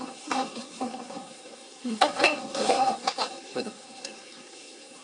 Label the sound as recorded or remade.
remade